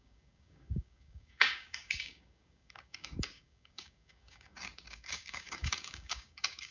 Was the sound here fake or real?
fake